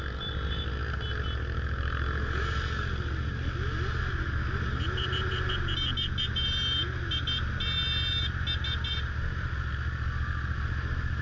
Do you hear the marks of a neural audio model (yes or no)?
no